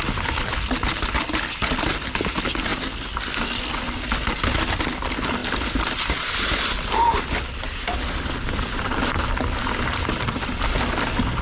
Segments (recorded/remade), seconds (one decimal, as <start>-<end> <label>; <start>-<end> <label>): 0.0-11.4 recorded